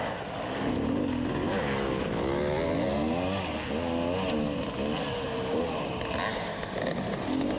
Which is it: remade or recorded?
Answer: recorded